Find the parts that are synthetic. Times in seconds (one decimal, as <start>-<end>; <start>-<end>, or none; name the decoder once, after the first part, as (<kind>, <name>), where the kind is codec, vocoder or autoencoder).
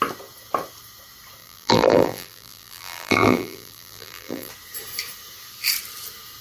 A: 1.4-4.5 (vocoder, BigVGAN v2)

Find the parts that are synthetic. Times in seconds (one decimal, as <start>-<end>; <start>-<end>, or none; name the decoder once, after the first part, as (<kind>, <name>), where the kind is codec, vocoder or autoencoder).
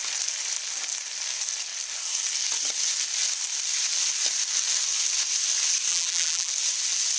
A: 5.9-6.5 (vocoder, BigVGAN v2)